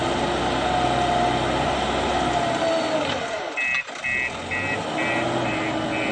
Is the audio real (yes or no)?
yes